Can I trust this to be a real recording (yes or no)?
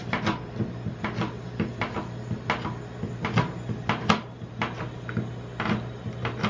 yes